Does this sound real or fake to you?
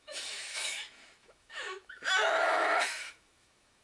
fake